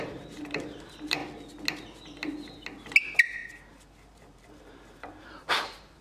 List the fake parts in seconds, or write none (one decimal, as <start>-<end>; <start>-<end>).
0.0-1.2; 3.0-6.0

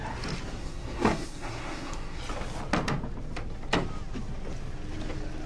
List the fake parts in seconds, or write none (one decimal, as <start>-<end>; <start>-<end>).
0.6-2.2

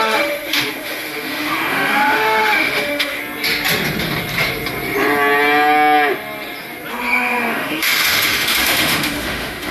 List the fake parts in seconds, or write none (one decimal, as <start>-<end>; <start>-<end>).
0.0-3.2; 6.9-9.7